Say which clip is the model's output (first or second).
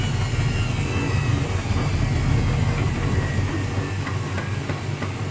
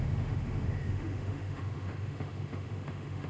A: second